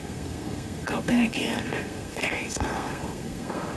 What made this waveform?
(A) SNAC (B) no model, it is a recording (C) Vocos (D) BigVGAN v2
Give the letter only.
A